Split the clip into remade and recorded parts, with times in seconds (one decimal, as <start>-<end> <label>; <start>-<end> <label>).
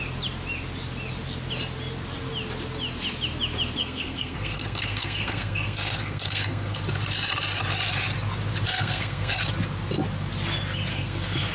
0.0-3.8 recorded; 3.8-6.8 remade; 6.8-8.7 recorded; 8.7-9.4 remade; 9.4-10.9 recorded; 10.9-11.5 remade